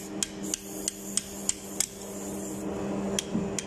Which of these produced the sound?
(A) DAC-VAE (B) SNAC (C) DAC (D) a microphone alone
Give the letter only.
D